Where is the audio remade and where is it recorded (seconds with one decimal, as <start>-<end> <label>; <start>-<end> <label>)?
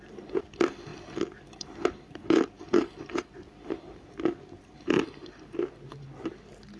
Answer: 0.0-6.8 remade